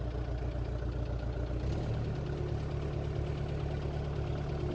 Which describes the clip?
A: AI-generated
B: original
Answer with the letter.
B